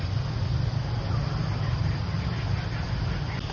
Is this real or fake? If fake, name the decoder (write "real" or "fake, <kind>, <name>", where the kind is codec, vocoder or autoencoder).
real